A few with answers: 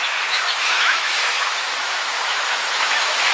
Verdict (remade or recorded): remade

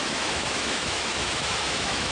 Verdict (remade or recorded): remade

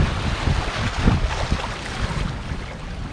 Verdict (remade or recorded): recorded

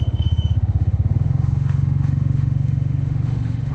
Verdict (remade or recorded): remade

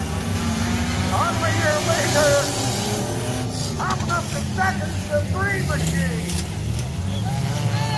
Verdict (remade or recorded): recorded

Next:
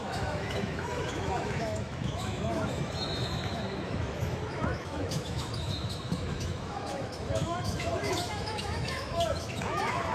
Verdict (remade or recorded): remade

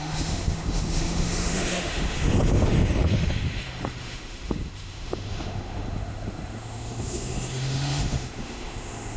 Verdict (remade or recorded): remade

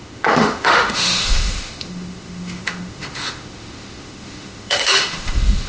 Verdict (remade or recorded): remade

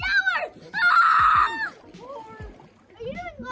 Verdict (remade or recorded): recorded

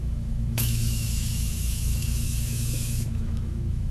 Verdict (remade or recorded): remade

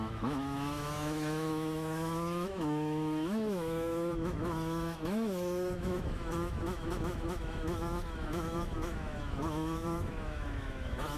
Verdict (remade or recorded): remade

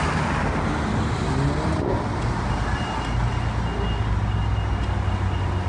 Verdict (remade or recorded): recorded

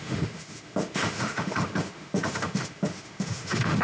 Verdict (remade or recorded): remade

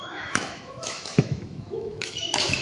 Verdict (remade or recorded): remade